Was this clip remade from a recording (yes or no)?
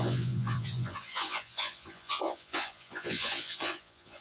yes